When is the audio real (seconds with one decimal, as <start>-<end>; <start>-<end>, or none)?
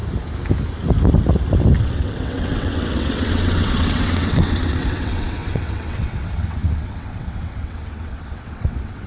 0.0-1.8